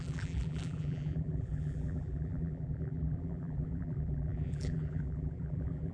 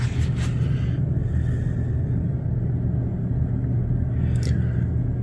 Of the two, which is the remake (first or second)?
first